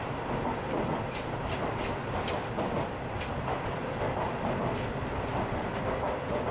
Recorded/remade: recorded